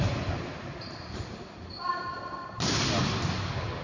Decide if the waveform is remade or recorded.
recorded